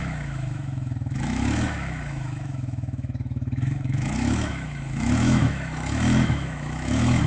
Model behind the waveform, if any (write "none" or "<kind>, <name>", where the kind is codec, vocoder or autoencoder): autoencoder, DAC-VAE